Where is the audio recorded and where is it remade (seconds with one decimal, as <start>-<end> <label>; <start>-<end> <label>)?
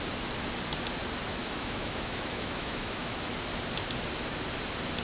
0.0-1.4 recorded; 1.4-3.3 remade; 3.3-5.0 recorded